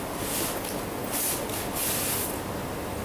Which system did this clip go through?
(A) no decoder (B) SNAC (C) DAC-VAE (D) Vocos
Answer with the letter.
A